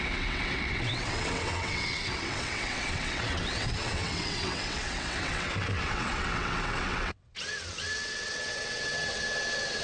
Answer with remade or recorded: remade